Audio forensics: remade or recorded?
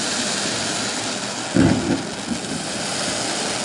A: recorded